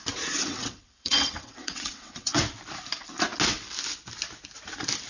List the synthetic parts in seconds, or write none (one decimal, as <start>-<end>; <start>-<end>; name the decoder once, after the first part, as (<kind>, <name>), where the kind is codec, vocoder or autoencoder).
0.5-2.4 (vocoder, WaveNeXt)